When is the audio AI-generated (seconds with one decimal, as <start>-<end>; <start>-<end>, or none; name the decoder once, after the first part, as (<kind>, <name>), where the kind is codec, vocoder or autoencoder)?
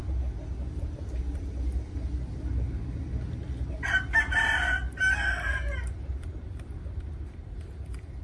5.5-8.2 (vocoder, BigVGAN v2)